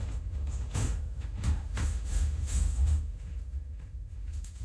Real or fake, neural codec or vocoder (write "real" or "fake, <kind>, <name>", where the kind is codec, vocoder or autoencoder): fake, autoencoder, DAC-VAE